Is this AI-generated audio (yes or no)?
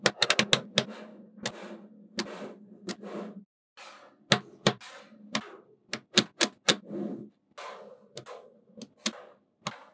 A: no